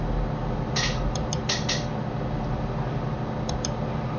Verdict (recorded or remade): recorded